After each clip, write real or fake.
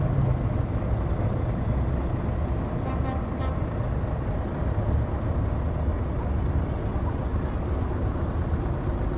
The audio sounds real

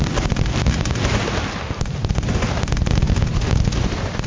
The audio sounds real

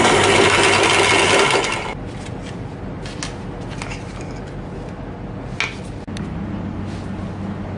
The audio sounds real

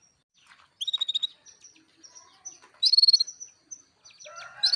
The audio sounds real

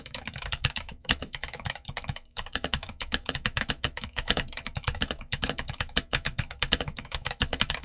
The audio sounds fake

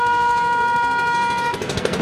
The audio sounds fake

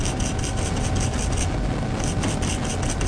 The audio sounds real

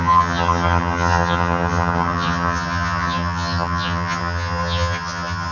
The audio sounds fake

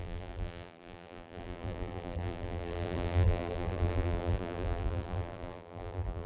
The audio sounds fake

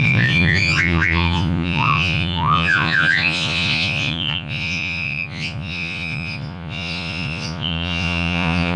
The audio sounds fake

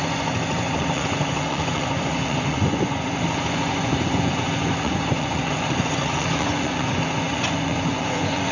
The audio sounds fake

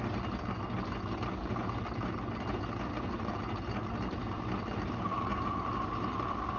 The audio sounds real